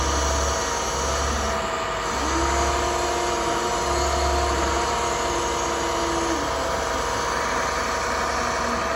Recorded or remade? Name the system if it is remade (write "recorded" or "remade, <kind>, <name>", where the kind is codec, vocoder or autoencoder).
recorded